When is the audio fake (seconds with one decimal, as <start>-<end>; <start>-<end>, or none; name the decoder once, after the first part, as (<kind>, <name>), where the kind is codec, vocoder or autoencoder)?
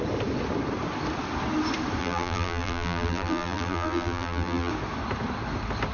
2.0-4.7 (vocoder, BigVGAN v2)